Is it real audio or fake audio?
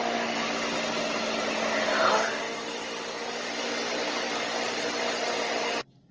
real